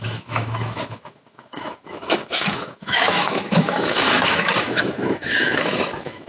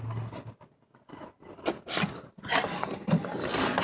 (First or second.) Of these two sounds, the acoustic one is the second